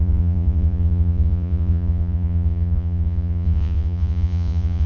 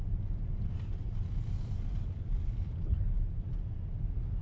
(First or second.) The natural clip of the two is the second